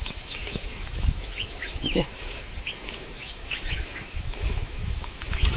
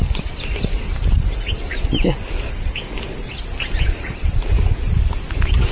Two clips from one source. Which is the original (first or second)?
second